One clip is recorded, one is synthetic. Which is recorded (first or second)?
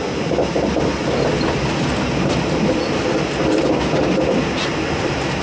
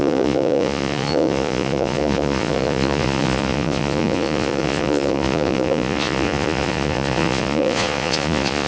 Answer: first